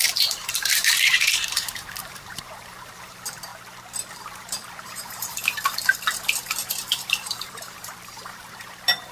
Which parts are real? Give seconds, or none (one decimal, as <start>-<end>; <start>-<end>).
3.5-4.1; 5.4-6.7